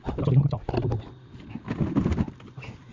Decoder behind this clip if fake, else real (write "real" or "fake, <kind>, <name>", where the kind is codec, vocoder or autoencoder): real